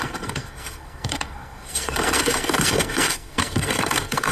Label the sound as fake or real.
fake